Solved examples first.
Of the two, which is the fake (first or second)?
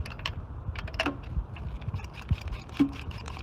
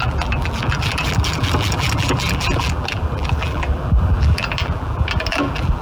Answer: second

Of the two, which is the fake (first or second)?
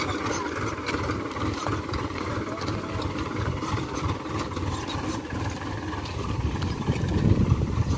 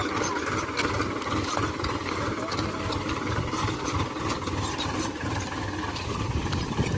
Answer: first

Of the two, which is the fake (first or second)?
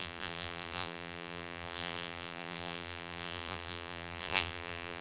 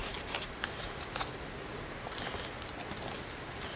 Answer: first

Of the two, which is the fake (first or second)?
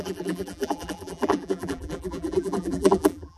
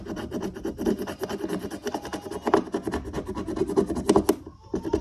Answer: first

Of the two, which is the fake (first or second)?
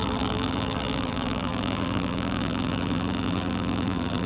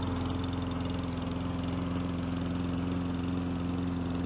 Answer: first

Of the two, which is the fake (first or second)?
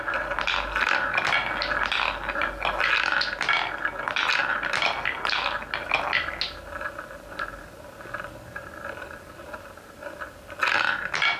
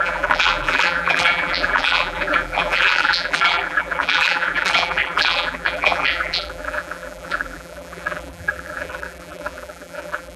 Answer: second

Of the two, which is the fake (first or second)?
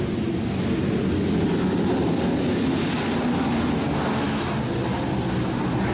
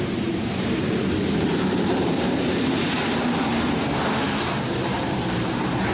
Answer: second